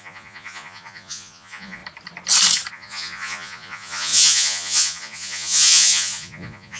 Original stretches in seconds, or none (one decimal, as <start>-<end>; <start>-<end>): 1.8-2.7